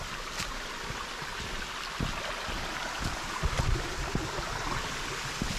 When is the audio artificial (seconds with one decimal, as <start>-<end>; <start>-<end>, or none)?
none

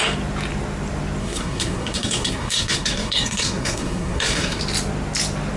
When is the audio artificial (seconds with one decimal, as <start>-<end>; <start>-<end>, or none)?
1.2-4.6

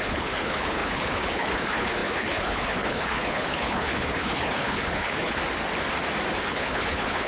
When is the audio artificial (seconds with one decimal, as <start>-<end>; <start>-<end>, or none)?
0.0-5.4; 6.4-7.3

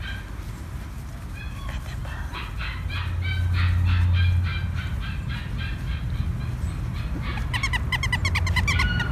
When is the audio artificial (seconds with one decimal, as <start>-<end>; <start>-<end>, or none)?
none

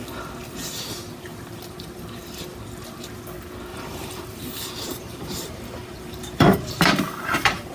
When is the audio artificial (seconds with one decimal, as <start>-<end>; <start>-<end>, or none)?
3.7-7.7